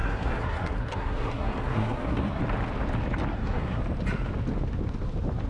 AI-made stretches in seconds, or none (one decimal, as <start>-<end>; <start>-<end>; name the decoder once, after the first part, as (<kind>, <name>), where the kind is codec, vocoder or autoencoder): 0.0-2.4 (codec, SNAC); 3.3-3.8